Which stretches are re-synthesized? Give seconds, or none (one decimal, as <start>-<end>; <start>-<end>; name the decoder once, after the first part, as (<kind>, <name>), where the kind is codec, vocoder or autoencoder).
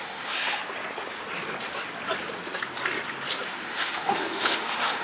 0.0-0.6 (autoencoder, DAC-VAE); 3.6-5.0